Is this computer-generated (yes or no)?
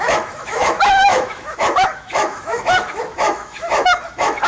yes